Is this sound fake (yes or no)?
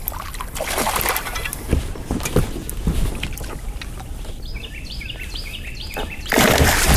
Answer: no